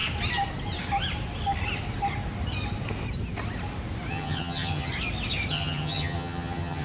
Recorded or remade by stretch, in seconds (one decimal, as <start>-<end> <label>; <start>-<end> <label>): 0.0-4.1 recorded; 4.1-4.9 remade; 4.9-5.5 recorded; 5.5-6.8 remade

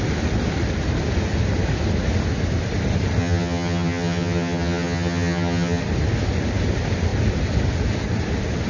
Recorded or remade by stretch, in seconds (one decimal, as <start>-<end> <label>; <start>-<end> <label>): 0.0-3.2 recorded; 3.2-5.8 remade; 5.8-8.7 recorded

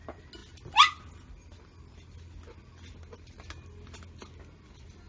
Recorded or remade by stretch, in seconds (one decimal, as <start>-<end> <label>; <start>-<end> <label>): 0.0-5.1 recorded

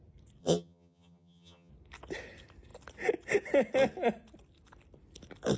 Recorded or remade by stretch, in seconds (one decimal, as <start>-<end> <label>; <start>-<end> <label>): 0.0-0.4 recorded; 0.4-1.7 remade; 1.7-5.6 recorded

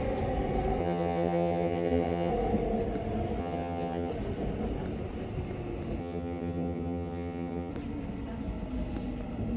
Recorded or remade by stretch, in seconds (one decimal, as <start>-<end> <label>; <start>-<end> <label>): 0.0-0.8 recorded; 0.8-2.3 remade; 2.3-3.4 recorded; 3.4-4.1 remade; 4.1-6.0 recorded; 6.0-7.7 remade; 7.7-9.6 recorded

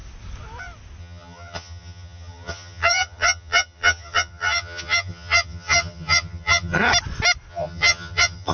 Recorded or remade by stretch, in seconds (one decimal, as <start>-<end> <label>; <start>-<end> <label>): 0.0-1.0 recorded; 1.0-6.9 remade; 6.9-7.5 recorded; 7.5-8.5 remade

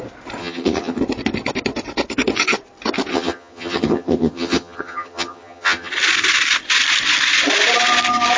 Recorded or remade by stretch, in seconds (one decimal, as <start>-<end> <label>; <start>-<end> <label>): 0.0-0.4 recorded; 0.4-1.0 remade; 1.0-3.1 recorded; 3.1-5.9 remade; 5.9-8.4 recorded